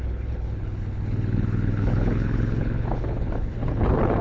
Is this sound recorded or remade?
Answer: remade